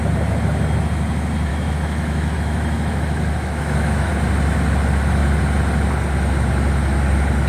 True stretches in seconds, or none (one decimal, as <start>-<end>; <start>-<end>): 0.0-1.5; 4.1-7.5